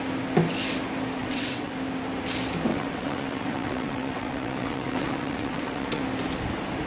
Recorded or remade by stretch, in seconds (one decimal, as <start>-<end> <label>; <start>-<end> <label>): 0.0-1.2 recorded; 1.2-1.7 remade; 1.7-2.7 recorded; 2.7-6.0 remade; 6.0-6.9 recorded